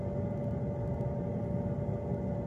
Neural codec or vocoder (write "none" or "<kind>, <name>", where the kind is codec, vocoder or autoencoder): none